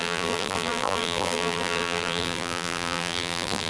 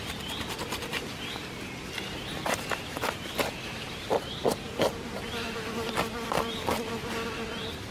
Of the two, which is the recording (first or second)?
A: second